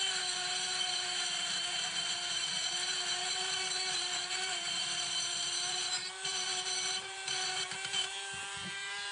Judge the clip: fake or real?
fake